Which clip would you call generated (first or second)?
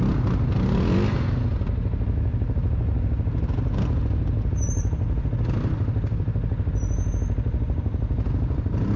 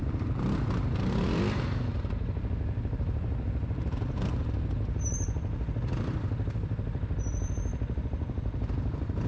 second